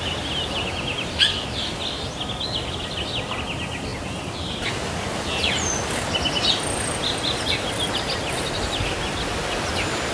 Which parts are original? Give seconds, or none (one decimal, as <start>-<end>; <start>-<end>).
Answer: 0.0-10.1